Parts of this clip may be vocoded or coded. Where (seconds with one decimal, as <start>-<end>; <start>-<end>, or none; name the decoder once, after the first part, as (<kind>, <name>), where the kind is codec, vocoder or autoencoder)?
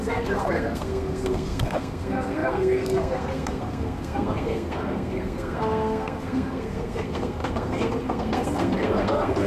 0.0-9.5 (codec, SNAC)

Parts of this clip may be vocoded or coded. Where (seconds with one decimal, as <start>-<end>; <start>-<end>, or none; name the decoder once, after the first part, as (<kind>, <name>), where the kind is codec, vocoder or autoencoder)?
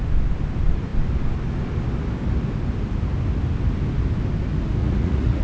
4.8-5.4 (vocoder, Vocos)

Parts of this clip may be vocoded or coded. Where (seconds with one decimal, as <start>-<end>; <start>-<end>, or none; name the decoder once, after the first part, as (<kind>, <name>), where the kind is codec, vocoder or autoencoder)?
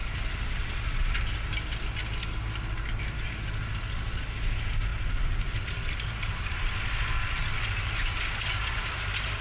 0.0-1.2 (vocoder, BigVGAN v2); 4.9-6.8; 7.4-9.4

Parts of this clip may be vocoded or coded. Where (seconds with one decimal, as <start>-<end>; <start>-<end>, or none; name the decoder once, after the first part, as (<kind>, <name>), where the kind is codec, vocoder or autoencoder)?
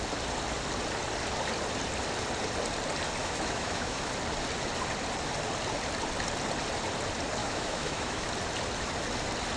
3.2-4.1 (autoencoder, DAC-VAE); 7.4-8.3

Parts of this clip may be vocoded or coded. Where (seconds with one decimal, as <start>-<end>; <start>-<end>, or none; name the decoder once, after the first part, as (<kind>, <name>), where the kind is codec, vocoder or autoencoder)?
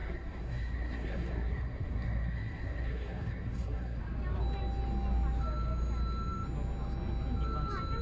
0.0-4.0 (codec, SNAC)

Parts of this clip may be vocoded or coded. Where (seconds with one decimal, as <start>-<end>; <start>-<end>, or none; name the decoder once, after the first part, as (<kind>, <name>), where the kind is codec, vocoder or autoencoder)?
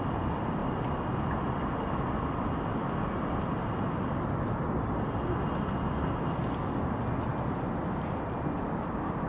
none